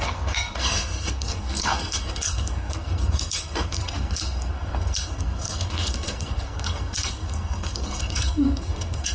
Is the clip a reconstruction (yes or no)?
yes